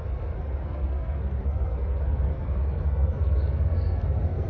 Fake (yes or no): yes